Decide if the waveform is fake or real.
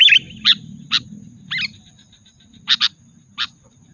real